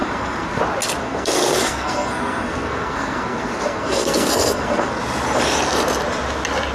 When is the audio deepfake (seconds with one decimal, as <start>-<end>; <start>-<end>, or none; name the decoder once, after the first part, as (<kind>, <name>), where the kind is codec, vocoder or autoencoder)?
0.0-0.6 (codec, SNAC); 1.0-5.0